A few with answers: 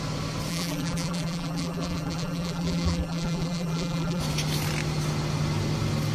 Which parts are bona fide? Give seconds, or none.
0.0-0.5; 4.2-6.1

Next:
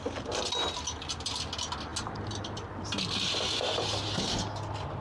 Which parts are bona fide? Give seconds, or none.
0.0-5.0

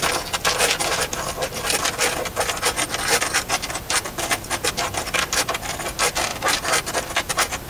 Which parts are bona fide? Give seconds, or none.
0.0-7.7

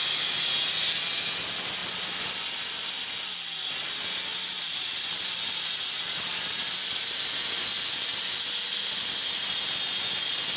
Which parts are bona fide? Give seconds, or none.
0.0-1.8; 2.9-4.3; 7.3-10.6

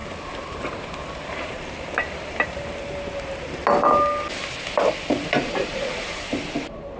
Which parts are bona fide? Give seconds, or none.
3.6-5.1